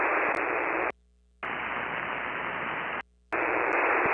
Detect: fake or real real